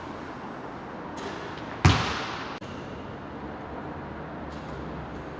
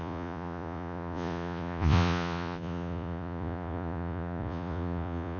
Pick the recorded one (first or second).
first